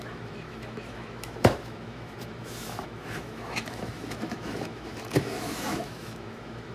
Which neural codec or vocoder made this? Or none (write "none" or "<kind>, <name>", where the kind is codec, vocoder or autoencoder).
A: autoencoder, DAC-VAE